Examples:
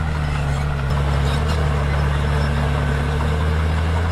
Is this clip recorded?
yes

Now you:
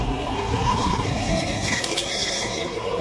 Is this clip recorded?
no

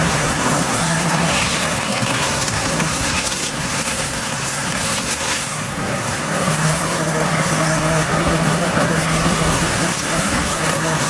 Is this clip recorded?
no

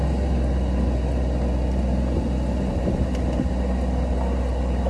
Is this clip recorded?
yes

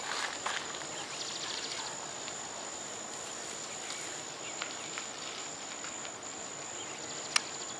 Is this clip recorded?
yes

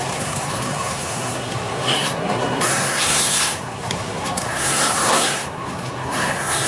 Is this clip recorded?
no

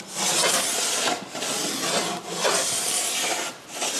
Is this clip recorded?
yes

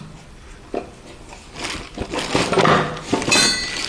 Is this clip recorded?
yes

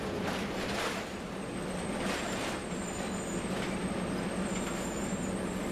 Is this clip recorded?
yes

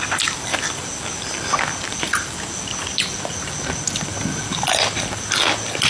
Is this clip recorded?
yes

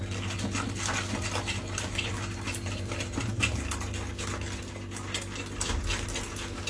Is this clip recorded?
yes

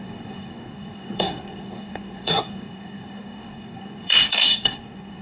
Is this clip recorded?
no